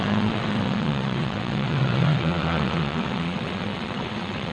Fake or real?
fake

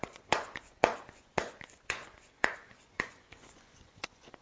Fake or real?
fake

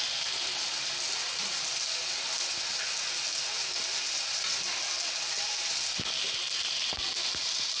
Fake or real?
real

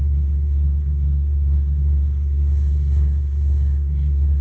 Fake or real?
fake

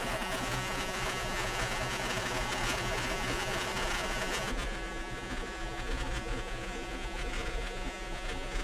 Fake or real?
fake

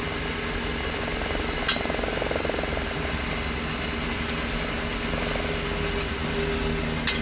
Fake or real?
real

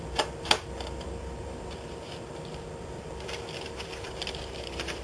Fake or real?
fake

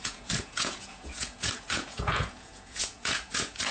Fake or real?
fake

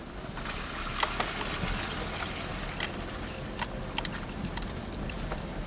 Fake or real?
real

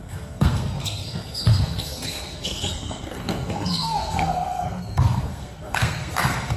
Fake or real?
fake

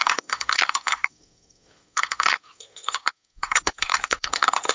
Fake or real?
fake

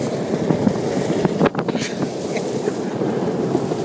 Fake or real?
real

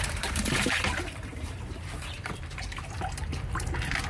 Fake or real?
fake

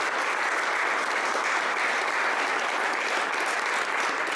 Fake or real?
real